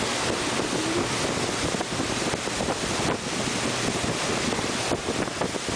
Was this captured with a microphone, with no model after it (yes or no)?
yes